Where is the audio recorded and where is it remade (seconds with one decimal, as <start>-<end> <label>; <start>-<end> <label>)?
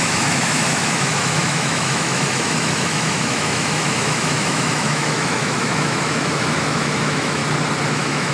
0.0-7.4 remade; 7.4-7.9 recorded; 7.9-8.3 remade